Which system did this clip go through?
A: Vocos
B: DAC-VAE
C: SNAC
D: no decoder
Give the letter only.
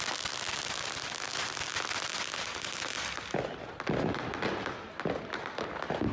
D